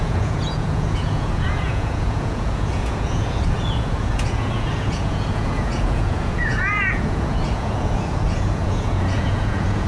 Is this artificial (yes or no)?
yes